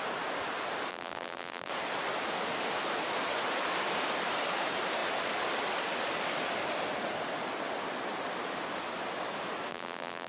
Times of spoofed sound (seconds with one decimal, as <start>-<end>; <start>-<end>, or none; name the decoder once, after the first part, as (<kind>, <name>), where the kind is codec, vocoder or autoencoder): 0.9-1.7 (vocoder, BigVGAN v2); 9.7-10.3

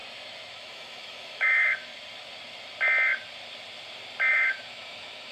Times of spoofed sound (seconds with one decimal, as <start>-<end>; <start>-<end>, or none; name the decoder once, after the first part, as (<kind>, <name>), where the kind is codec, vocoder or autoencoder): 0.5-1.9 (autoencoder, DAC-VAE); 4.3-5.3

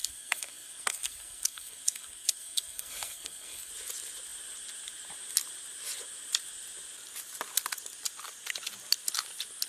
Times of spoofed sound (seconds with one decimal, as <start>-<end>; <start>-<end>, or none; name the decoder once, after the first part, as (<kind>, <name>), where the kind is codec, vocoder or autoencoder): 0.0-3.7 (codec, SNAC)

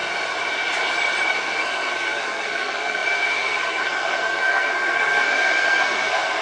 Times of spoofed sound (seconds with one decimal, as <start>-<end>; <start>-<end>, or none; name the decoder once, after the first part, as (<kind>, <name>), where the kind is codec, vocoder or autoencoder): 1.3-6.4 (codec, SNAC)